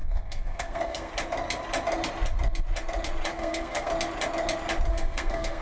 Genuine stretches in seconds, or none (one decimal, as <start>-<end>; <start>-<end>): 1.1-3.3; 3.9-4.9